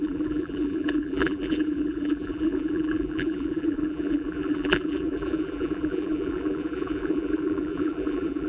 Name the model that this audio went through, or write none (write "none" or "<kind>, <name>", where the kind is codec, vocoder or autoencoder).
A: vocoder, BigVGAN v2